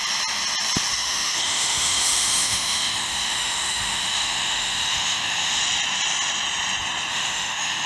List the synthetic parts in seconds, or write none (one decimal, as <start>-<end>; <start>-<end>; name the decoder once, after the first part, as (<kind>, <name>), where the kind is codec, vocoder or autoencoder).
0.9-5.6 (autoencoder, DAC-VAE); 7.1-7.9